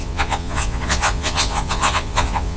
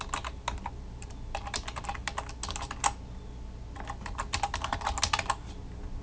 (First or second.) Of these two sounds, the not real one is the first